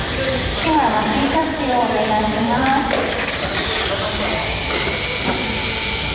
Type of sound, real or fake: fake